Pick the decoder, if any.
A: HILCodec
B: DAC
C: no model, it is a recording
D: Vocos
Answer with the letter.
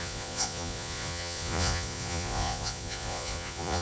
D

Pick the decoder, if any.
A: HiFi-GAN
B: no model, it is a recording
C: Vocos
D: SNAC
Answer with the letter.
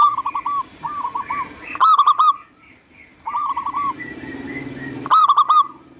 B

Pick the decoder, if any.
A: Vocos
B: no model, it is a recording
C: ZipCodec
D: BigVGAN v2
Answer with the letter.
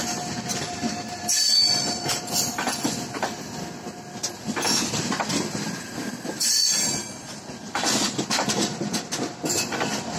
B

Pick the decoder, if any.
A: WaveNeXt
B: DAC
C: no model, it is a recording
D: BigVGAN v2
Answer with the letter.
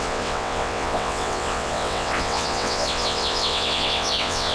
A